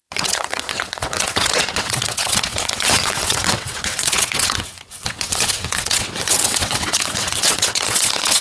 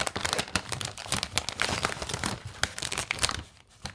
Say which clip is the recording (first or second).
second